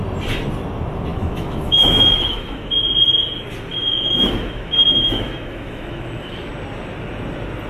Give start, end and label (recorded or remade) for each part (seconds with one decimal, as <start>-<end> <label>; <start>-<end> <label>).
0.0-1.1 recorded; 1.1-2.7 remade; 2.7-3.7 recorded; 3.7-6.5 remade; 6.5-7.7 recorded